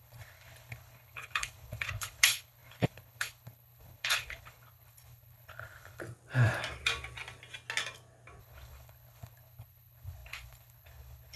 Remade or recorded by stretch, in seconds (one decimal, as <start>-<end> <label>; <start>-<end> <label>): 0.0-6.0 remade; 6.0-8.4 recorded; 8.4-11.4 remade